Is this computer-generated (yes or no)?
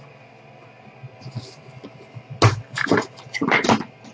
no